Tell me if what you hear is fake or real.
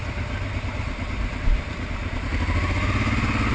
real